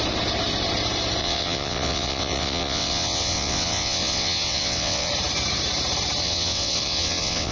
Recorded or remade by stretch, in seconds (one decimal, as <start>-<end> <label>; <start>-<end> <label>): 0.0-1.2 recorded; 1.2-5.1 remade; 5.1-6.2 recorded; 6.2-7.5 remade